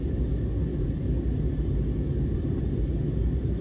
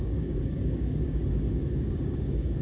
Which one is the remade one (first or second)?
second